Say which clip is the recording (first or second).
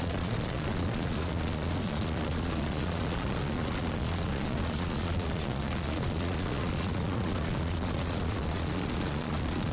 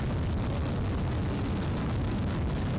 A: second